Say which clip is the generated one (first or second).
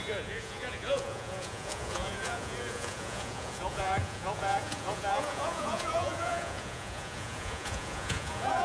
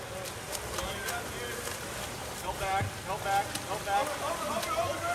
first